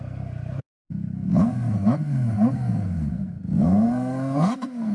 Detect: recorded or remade remade